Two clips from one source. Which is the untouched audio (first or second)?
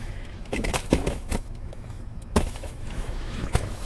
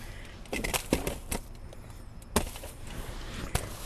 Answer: second